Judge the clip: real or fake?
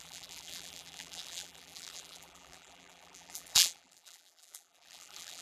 fake